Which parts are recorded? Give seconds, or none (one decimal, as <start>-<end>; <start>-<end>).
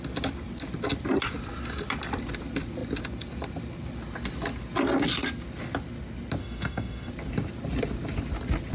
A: 0.0-6.4; 7.1-8.7